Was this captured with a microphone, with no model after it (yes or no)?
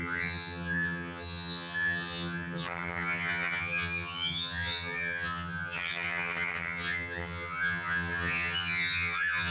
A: no